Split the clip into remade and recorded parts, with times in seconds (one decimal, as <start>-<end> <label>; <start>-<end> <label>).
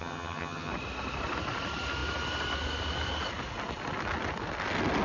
0.0-0.7 remade; 0.7-5.0 recorded